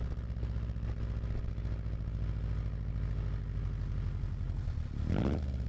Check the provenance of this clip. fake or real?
real